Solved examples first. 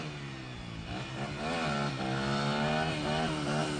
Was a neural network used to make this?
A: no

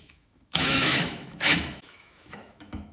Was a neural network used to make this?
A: yes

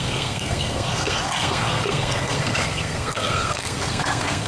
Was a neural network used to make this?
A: yes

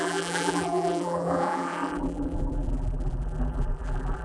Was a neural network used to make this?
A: yes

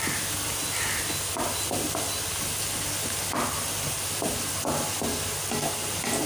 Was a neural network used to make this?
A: no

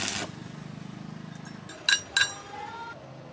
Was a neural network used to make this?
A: no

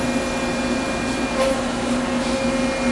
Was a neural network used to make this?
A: no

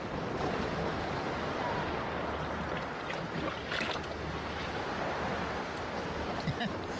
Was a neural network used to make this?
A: no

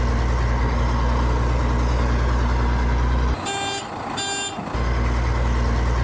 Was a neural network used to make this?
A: no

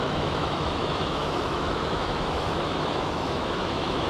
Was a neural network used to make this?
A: yes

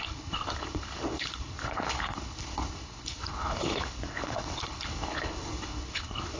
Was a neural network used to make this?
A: yes